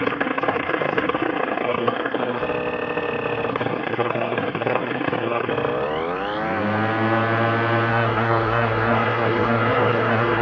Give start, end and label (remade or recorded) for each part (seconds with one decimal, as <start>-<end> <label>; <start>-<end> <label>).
0.0-2.4 remade; 2.4-3.5 recorded; 3.5-5.5 remade; 5.5-7.9 recorded; 7.9-10.4 remade